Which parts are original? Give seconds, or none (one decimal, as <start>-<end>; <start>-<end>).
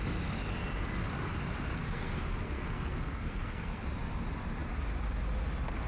0.0-1.7; 3.8-5.9